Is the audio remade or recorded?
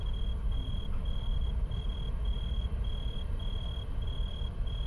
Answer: recorded